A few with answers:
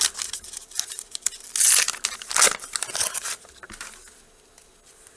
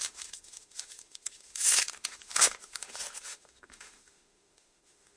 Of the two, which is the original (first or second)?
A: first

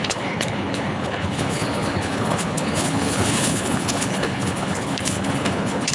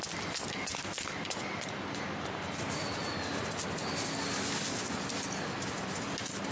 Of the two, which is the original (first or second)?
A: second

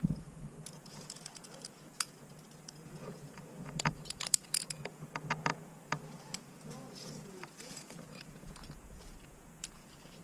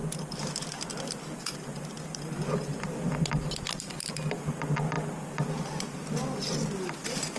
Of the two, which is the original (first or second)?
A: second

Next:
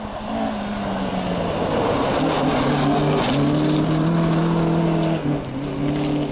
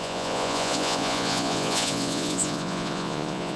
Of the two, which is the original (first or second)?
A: first